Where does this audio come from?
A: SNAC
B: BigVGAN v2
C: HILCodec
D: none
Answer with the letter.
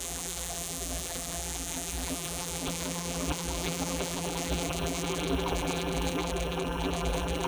B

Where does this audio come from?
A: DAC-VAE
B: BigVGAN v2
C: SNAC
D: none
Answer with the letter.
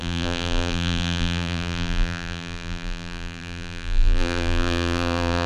B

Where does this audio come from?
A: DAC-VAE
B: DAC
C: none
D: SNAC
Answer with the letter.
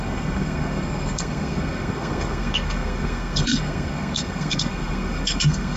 D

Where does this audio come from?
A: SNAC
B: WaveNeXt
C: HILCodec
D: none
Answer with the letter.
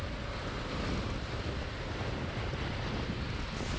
D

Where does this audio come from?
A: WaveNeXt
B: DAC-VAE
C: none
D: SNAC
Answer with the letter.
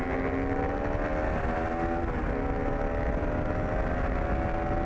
C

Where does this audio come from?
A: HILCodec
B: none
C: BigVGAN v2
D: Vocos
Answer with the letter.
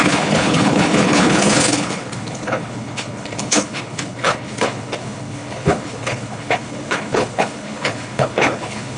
A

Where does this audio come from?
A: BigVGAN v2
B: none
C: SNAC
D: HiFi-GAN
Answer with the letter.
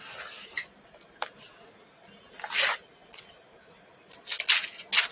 B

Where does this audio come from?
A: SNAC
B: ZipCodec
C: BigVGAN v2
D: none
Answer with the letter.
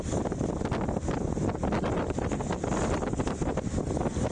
D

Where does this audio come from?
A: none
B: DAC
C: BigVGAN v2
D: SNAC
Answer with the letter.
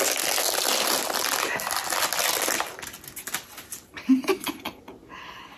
A